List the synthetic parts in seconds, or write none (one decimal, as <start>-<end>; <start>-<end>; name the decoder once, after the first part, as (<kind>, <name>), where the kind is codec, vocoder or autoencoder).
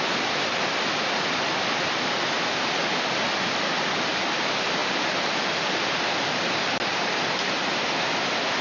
4.8-5.4 (vocoder, BigVGAN v2)